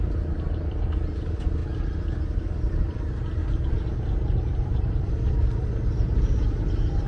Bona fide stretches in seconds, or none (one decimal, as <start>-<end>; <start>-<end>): 0.0-3.4; 5.1-7.1

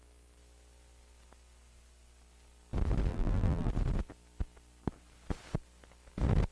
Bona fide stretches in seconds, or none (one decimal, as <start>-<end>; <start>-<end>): 0.0-3.1; 3.7-6.5

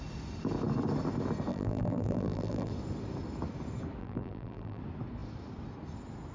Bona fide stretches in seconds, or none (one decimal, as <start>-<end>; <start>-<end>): 0.0-1.5; 2.7-4.0; 4.8-6.3

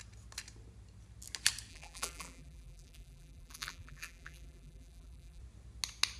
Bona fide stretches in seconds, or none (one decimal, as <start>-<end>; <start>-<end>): 0.0-1.7; 5.4-6.2

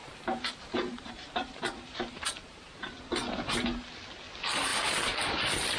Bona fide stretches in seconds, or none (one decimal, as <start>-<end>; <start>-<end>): 2.9-5.8

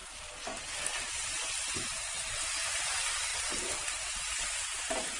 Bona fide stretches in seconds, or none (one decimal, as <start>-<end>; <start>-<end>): 0.0-2.9